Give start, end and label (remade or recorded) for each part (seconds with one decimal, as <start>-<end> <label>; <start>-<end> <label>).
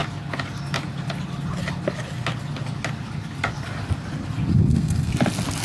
0.0-4.5 recorded; 4.5-5.1 remade; 5.1-5.6 recorded